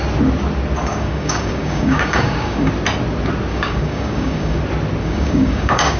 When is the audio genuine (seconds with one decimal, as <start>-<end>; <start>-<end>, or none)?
0.0-0.9; 2.7-3.5; 4.6-5.0